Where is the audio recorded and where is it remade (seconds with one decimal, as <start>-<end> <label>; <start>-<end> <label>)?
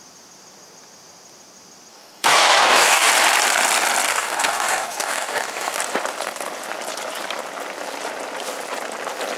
0.0-1.9 recorded; 1.9-3.1 remade; 3.1-4.1 recorded; 4.1-5.8 remade; 5.8-9.4 recorded